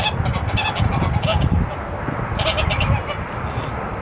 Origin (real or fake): real